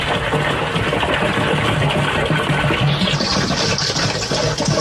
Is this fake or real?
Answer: real